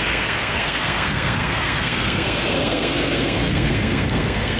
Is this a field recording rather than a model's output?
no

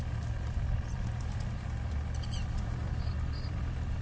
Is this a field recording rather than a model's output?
yes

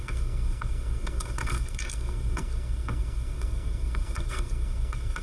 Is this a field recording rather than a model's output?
no